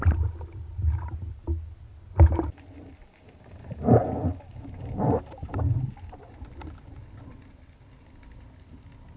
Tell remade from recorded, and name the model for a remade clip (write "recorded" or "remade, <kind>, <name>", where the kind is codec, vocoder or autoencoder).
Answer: recorded